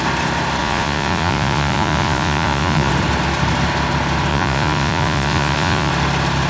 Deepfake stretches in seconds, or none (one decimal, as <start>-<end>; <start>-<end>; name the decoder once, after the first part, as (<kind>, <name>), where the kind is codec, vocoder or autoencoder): 0.6-2.9 (vocoder, Vocos); 4.3-5.9